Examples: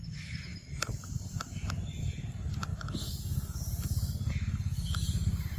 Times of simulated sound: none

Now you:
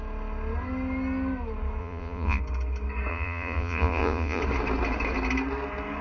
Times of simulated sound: 1.8-2.4 (vocoder, Vocos); 3.1-4.4

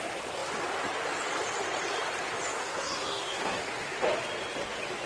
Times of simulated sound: 2.6-3.6 (codec, SNAC)

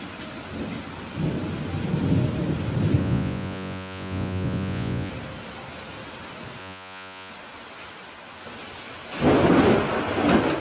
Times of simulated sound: 3.0-5.1 (vocoder, Vocos); 6.6-7.3

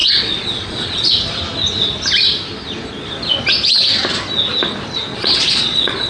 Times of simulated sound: 0.0-1.1 (vocoder, Vocos); 5.1-6.1